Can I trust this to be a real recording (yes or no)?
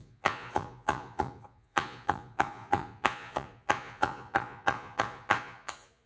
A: no